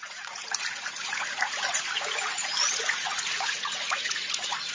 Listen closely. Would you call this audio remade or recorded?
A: remade